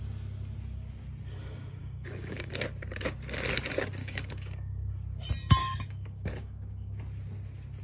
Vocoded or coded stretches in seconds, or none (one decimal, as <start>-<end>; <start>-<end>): 1.8-2.5; 4.0-4.9; 5.6-7.0